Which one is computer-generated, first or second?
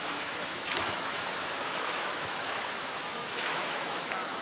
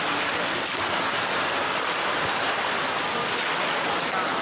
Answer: first